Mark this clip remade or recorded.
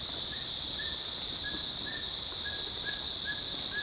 recorded